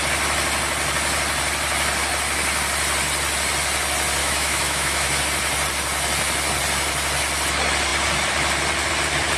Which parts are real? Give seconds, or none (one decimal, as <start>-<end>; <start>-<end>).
0.0-4.2; 5.2-9.4